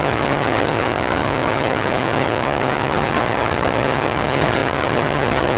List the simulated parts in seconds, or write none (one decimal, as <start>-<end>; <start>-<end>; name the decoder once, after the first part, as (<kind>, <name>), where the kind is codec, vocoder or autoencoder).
0.0-5.6 (vocoder, HiFi-GAN)